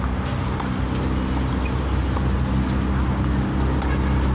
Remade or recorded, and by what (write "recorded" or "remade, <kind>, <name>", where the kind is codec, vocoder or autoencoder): recorded